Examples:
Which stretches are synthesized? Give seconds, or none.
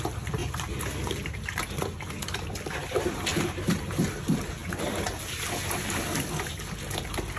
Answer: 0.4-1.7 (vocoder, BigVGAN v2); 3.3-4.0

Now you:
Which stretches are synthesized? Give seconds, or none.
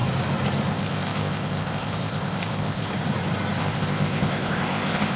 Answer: 0.7-2.9 (codec, ZipCodec); 3.6-5.2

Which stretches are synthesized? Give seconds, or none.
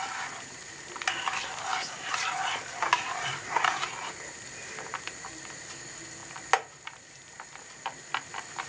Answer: none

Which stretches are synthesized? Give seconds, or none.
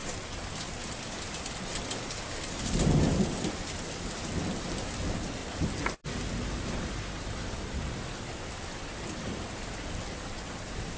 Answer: 3.6-5.4 (vocoder, BigVGAN v2); 6.3-11.0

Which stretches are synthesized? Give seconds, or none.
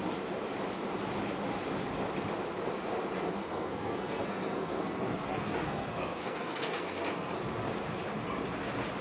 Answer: 3.4-7.4 (codec, SNAC)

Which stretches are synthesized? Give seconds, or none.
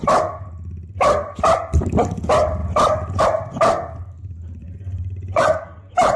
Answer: 4.6-5.6 (vocoder, Vocos)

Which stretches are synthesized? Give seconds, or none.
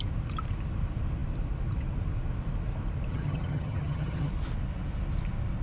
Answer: 3.1-4.3 (vocoder, HiFi-GAN)